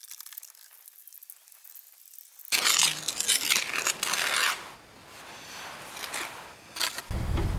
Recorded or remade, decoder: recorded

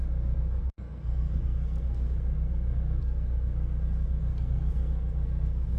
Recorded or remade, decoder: remade, codec, SNAC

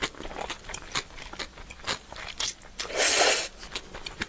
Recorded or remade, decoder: recorded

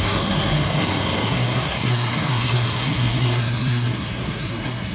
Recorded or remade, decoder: remade, codec, SNAC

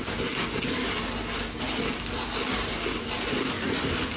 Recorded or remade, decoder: recorded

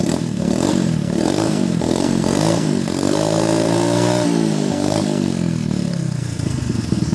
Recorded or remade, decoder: remade, codec, SNAC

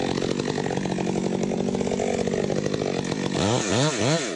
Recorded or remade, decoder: recorded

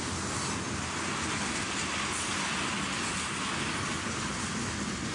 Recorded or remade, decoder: recorded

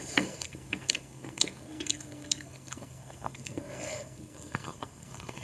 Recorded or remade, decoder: remade, codec, SNAC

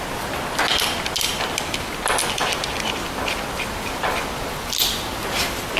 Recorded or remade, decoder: recorded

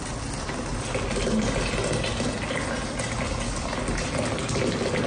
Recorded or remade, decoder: recorded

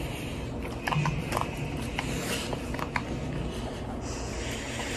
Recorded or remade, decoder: recorded